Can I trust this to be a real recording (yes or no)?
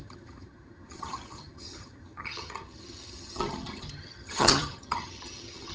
no